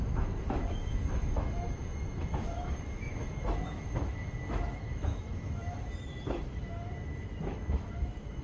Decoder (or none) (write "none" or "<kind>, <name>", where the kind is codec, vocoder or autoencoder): autoencoder, DAC-VAE